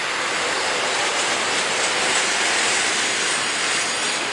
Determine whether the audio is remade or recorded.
recorded